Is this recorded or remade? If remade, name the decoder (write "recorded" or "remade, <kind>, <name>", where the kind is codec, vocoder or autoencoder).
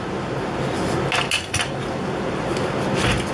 recorded